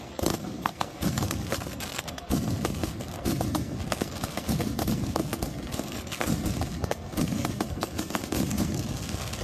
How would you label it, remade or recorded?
remade